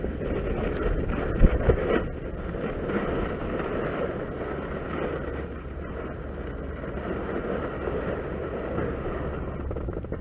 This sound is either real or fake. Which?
real